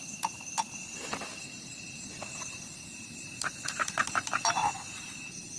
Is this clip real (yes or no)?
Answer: no